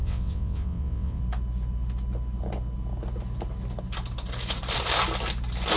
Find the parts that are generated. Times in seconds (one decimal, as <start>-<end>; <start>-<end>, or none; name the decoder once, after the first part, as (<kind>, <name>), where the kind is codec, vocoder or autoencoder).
0.0-1.2 (vocoder, WaveNeXt)